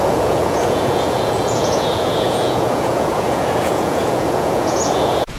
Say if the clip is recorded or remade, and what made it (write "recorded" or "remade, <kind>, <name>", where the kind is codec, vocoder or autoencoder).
remade, vocoder, Vocos